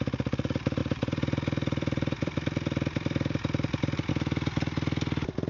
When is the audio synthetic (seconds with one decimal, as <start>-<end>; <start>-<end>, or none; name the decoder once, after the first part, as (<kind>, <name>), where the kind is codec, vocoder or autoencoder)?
0.8-4.1 (vocoder, BigVGAN v2)

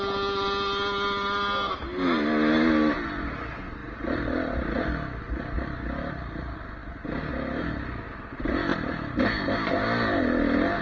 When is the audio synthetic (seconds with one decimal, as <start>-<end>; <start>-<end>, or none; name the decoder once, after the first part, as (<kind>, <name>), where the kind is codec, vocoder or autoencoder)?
8.7-9.3 (vocoder, BigVGAN v2)

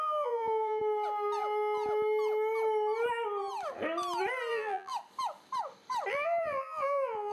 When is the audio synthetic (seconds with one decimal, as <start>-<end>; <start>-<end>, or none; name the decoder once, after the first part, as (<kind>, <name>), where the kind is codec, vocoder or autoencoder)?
0.0-0.8 (vocoder, BigVGAN v2); 4.5-4.9; 6.1-7.3

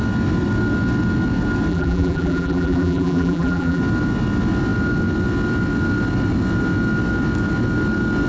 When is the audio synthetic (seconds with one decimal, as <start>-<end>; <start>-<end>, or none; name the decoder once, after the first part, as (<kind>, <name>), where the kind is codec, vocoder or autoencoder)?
1.7-3.8 (vocoder, BigVGAN v2)

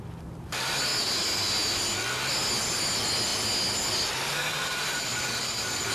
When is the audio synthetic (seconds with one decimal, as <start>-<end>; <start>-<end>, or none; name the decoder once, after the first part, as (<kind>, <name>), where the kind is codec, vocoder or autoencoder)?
4.5-5.9 (vocoder, BigVGAN v2)

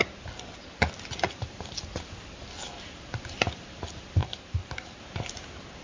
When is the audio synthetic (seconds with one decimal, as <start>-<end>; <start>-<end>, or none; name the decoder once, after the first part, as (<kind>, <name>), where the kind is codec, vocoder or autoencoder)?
4.2-5.0 (vocoder, BigVGAN v2)